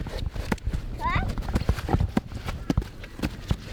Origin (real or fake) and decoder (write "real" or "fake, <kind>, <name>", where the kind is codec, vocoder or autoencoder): real